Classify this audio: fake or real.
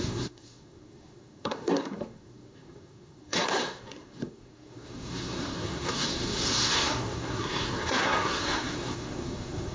fake